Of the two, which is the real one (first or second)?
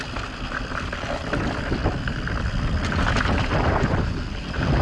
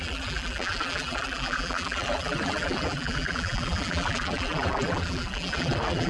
first